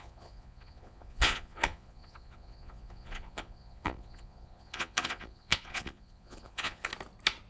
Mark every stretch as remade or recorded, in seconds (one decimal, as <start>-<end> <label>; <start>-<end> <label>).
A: 0.0-6.9 remade; 6.9-7.5 recorded